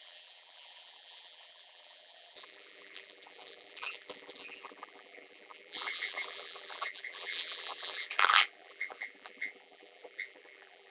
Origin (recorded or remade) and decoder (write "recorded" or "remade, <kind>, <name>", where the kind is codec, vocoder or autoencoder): remade, vocoder, BigVGAN v2